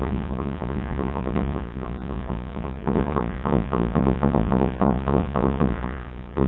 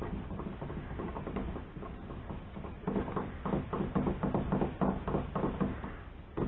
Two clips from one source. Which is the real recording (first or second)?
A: second